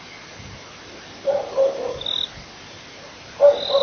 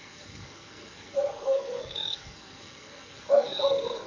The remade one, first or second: second